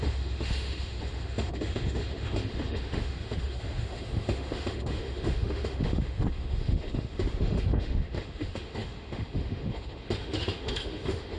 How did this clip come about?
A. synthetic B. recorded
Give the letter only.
A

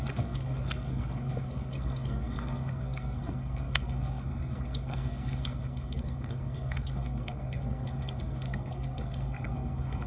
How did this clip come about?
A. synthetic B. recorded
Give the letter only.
A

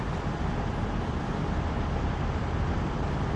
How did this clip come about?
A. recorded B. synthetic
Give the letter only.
A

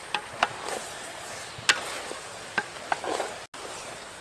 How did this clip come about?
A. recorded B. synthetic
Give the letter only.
A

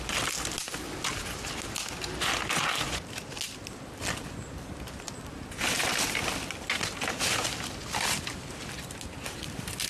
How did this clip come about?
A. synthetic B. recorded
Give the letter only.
B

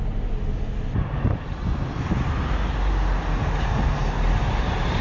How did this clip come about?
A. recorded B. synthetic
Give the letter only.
A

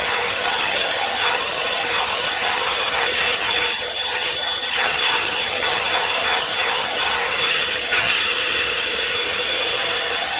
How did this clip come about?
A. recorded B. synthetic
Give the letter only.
B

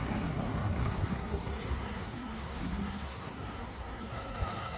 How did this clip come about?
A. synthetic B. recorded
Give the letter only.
A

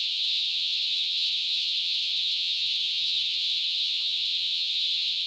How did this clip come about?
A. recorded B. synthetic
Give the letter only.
B